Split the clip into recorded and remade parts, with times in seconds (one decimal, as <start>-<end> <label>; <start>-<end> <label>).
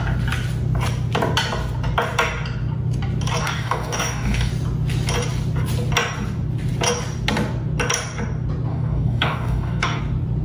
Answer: 0.0-3.4 recorded; 3.4-4.5 remade; 4.5-8.7 recorded; 8.7-10.0 remade; 10.0-10.4 recorded